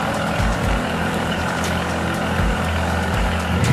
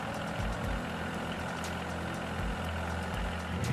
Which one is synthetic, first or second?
first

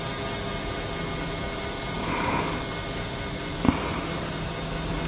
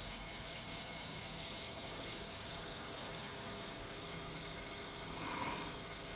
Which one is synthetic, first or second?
second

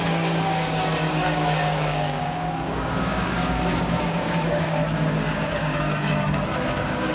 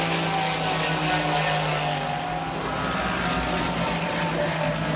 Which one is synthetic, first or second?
first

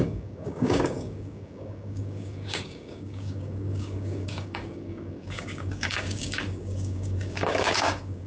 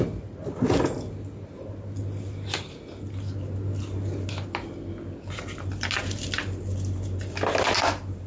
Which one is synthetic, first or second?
first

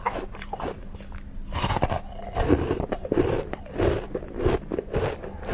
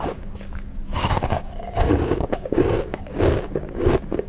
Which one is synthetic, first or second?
second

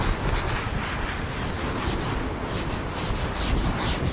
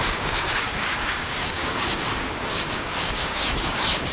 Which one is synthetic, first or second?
second